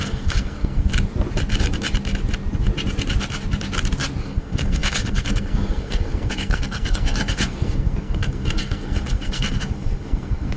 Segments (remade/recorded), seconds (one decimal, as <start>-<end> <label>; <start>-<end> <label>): 0.0-0.9 remade; 0.9-4.2 recorded; 4.2-10.6 remade